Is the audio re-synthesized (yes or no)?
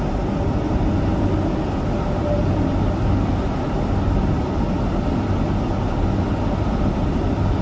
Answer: no